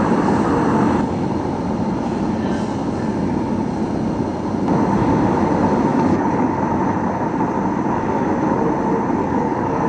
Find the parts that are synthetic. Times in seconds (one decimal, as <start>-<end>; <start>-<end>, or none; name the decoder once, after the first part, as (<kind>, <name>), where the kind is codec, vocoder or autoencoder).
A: 5.9-6.6 (codec, DAC); 9.2-9.9